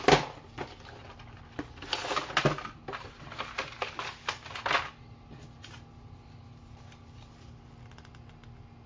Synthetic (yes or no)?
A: no